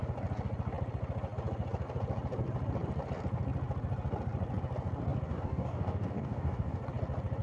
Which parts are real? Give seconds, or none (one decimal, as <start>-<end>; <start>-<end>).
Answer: 0.0-5.3; 6.8-7.4